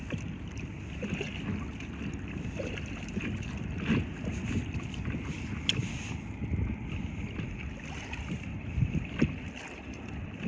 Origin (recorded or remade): recorded